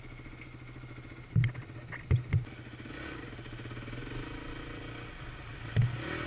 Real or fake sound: real